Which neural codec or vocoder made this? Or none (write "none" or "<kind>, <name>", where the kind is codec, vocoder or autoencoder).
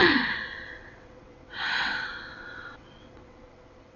vocoder, WaveNeXt